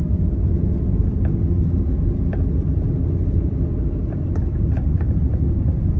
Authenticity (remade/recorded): recorded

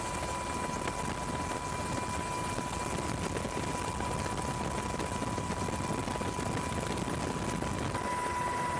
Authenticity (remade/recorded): recorded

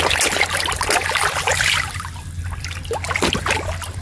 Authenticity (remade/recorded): recorded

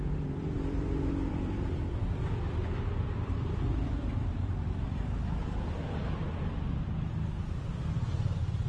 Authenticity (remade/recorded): remade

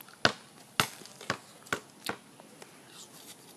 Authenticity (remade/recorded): recorded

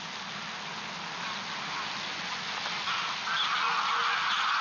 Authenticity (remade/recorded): recorded